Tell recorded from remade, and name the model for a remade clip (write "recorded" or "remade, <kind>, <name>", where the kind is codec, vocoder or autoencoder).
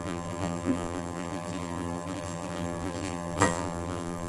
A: remade, vocoder, BigVGAN v2